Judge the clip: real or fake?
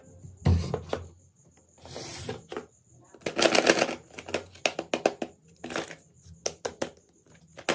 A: real